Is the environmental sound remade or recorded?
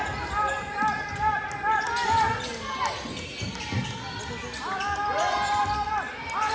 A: recorded